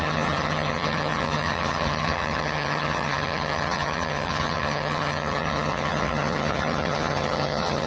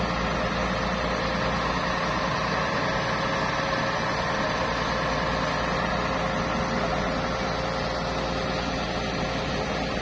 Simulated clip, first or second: first